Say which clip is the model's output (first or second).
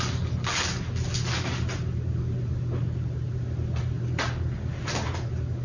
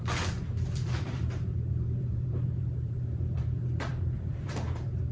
second